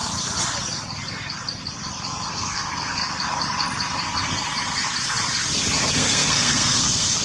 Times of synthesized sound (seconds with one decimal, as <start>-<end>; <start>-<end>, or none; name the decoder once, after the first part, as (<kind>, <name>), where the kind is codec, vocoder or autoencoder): 2.3-3.0 (codec, SNAC); 5.8-7.2